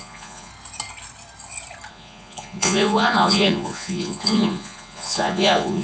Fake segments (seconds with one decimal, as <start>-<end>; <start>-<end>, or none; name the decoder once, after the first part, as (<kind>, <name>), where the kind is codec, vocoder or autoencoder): 0.0-0.5 (vocoder, Vocos); 1.9-5.8